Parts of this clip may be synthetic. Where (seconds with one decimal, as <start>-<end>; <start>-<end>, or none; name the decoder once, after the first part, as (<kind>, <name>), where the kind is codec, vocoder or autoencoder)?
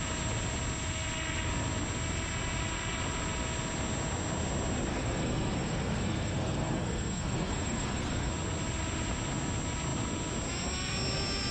4.9-8.3 (codec, SNAC)